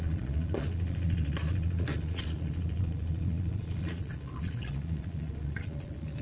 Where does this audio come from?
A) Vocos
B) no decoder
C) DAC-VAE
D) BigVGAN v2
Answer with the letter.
A